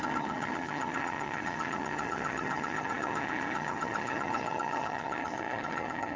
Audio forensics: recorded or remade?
remade